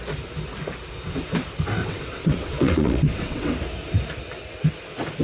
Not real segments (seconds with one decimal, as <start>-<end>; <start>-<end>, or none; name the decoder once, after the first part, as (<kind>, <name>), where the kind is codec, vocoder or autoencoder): 1.8-3.5 (vocoder, WaveNeXt)